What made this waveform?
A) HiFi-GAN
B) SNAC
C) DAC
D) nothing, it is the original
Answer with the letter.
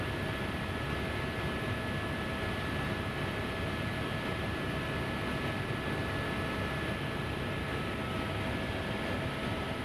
D